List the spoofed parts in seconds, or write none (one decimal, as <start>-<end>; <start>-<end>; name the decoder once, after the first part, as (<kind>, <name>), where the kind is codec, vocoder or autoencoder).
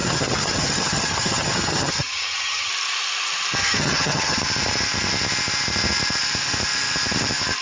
0.0-2.7 (vocoder, HiFi-GAN); 3.6-4.4